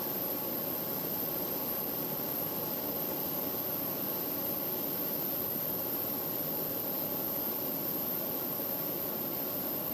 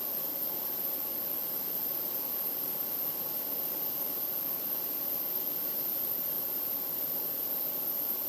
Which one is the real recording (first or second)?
first